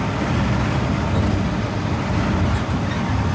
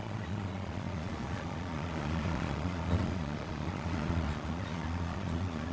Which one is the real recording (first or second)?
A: first